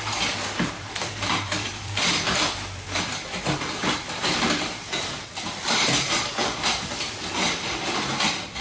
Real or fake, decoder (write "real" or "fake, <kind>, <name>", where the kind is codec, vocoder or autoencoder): fake, vocoder, BigVGAN v2